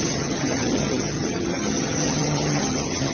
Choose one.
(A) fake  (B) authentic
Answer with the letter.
A